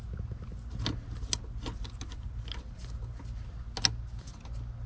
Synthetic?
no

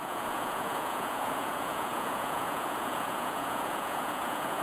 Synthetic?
yes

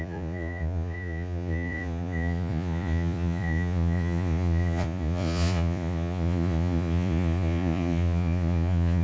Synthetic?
yes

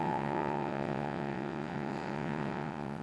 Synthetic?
yes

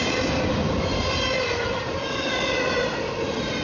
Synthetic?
no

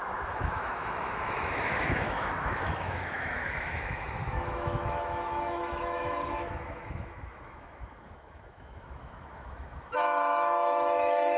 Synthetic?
yes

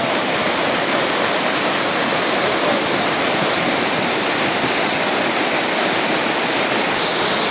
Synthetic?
no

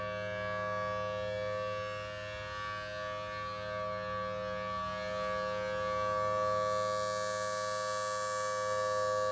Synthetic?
no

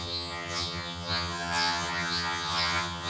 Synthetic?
yes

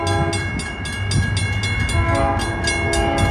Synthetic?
no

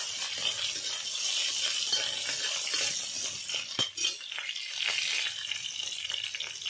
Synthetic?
no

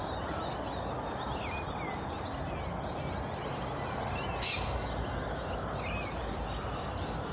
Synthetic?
no